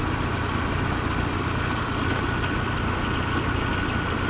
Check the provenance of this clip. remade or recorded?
recorded